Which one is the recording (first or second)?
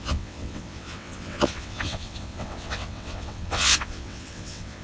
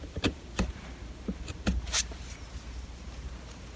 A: second